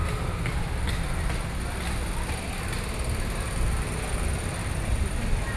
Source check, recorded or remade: recorded